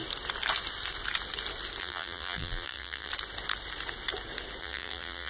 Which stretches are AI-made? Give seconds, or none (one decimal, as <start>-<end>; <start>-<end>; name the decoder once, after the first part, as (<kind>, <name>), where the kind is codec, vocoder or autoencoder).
1.8-3.1 (vocoder, BigVGAN v2); 4.6-5.3